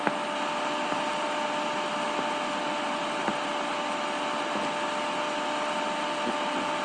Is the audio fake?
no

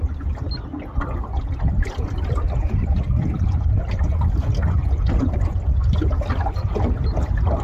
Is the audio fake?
no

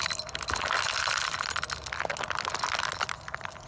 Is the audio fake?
no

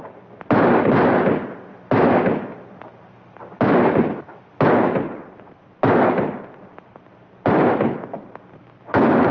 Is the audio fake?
no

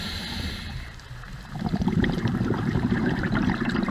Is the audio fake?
yes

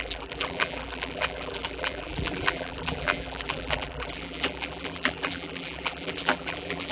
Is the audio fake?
yes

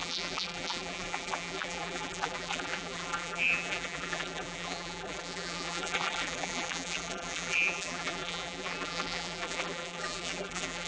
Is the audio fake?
yes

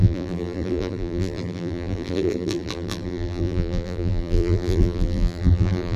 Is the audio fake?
yes